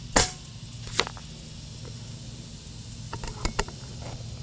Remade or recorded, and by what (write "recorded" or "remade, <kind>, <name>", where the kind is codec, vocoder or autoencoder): recorded